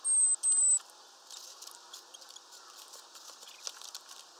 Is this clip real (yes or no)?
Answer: yes